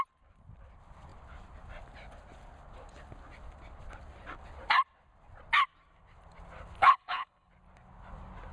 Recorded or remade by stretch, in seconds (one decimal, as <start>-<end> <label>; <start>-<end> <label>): 0.0-6.8 recorded; 6.8-7.5 remade; 7.5-8.5 recorded

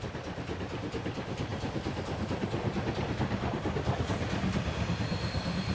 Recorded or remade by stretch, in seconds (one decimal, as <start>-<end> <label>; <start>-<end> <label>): 0.0-5.7 recorded

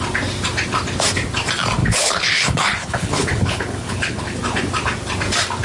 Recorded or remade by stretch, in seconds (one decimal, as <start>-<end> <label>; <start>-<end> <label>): 0.0-1.8 recorded; 1.8-4.2 remade; 4.2-5.6 recorded

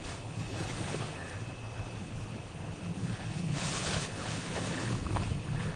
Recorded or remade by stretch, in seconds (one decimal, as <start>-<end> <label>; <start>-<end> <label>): 0.0-1.2 remade; 1.2-1.9 recorded; 1.9-5.8 remade

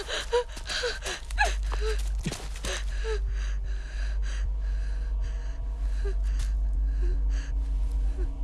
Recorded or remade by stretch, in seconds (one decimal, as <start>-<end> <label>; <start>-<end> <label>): 0.0-8.4 recorded